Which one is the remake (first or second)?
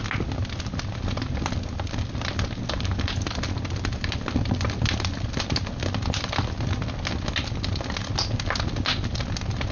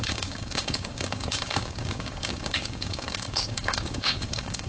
second